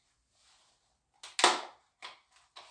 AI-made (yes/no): no